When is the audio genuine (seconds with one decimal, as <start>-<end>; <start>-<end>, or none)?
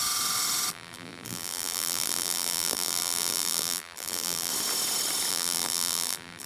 0.0-0.7; 4.5-5.3